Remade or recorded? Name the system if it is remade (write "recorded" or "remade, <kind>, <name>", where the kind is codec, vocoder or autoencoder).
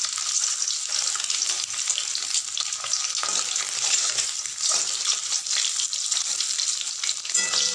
recorded